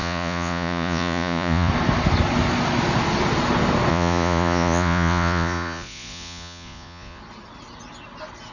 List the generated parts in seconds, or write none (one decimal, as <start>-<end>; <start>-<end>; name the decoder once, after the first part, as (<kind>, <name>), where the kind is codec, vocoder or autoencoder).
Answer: 0.0-1.7 (vocoder, Vocos); 3.9-7.2